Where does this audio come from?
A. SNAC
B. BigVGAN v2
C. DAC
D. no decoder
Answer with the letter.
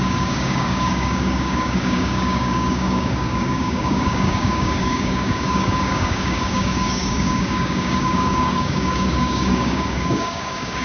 C